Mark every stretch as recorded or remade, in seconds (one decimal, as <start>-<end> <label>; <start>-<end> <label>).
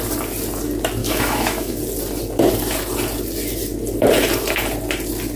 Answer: 0.0-1.0 recorded; 1.0-1.8 remade; 1.8-5.4 recorded